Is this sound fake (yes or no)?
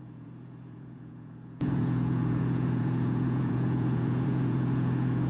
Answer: yes